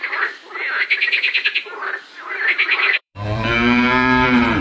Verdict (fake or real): fake